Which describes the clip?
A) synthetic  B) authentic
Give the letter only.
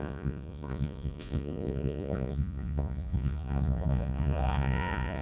A